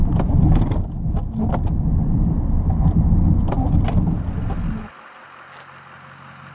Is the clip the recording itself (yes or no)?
yes